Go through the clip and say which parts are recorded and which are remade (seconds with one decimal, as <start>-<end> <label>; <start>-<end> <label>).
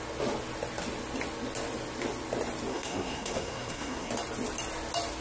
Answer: 0.0-2.7 recorded; 2.7-4.1 remade; 4.1-5.2 recorded